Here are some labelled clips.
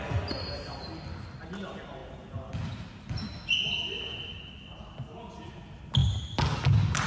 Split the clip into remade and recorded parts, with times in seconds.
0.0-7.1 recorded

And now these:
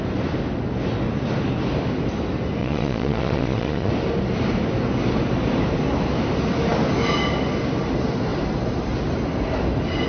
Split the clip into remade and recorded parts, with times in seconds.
0.0-2.6 recorded; 2.6-3.9 remade; 3.9-10.1 recorded

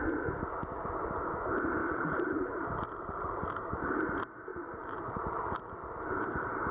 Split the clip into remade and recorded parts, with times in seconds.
0.0-1.8 recorded; 1.8-3.9 remade; 3.9-4.5 recorded; 4.5-5.6 remade; 5.6-6.7 recorded